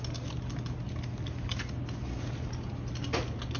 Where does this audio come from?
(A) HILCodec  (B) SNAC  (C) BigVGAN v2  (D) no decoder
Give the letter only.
D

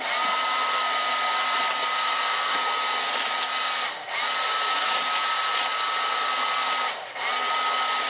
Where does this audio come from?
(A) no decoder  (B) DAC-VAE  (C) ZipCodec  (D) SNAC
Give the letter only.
A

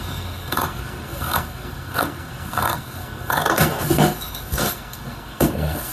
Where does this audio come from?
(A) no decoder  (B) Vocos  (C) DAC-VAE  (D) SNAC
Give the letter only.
D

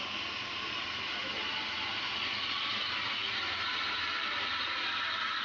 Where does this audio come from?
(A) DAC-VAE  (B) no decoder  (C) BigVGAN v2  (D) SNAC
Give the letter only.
B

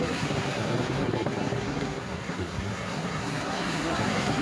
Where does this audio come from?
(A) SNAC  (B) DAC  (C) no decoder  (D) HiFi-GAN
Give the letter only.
A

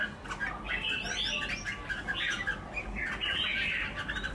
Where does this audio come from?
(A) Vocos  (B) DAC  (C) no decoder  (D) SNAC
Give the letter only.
C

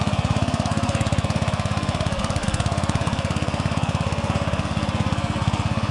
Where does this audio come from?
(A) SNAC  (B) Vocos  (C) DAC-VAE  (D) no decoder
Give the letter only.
A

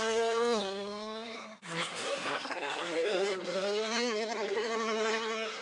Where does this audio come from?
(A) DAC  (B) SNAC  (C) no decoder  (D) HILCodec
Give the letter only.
B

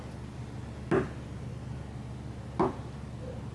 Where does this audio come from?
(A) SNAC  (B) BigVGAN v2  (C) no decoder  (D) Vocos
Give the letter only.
C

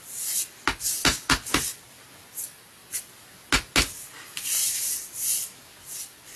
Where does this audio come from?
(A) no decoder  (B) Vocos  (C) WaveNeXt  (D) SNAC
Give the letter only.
A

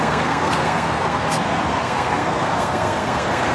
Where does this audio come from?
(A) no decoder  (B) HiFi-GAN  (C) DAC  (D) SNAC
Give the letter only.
D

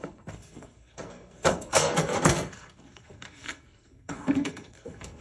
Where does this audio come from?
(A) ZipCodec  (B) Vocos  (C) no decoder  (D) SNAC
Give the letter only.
D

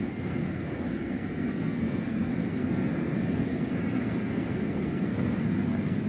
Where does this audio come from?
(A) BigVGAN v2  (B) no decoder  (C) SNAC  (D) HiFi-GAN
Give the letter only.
C